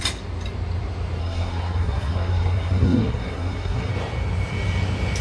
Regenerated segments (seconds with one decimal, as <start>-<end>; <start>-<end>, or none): 1.2-3.9